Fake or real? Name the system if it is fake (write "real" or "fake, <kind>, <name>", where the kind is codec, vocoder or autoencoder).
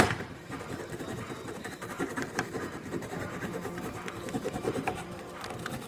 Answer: fake, vocoder, BigVGAN v2